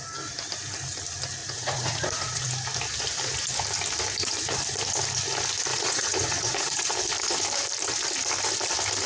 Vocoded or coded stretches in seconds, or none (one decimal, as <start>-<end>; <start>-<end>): 1.4-2.5; 5.7-6.9